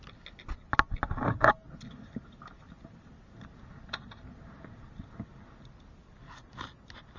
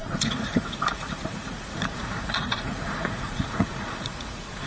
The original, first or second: first